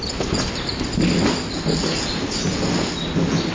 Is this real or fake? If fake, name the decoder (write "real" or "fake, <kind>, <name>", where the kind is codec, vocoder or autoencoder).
real